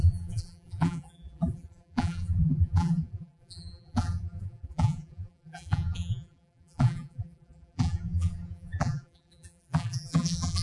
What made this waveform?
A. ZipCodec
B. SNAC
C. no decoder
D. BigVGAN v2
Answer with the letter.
D